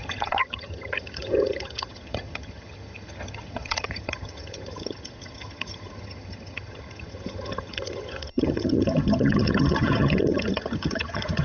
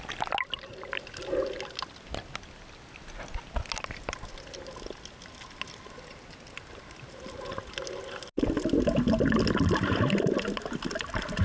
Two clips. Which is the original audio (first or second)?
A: second